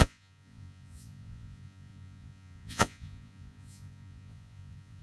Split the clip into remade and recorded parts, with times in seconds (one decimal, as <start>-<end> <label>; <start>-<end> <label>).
0.0-5.0 remade